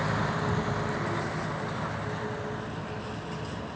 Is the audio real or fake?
real